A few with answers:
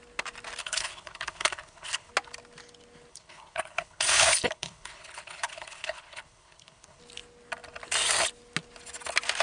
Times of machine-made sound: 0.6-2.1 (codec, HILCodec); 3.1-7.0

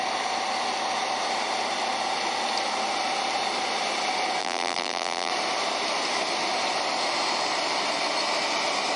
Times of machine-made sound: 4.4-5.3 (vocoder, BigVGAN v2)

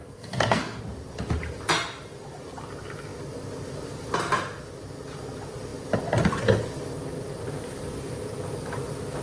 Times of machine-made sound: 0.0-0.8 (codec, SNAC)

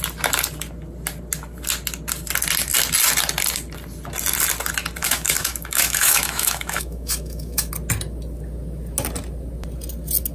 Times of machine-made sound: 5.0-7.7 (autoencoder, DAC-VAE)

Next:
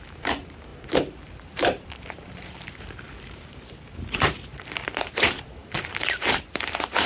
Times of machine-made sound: 0.0-7.1 (vocoder, BigVGAN v2)

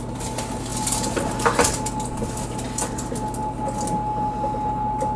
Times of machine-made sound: none